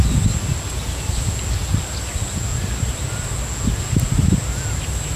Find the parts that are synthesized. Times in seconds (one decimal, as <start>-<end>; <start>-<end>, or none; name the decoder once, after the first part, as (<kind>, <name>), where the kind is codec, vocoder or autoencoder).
none